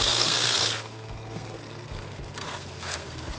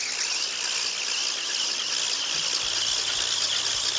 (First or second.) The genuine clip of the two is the second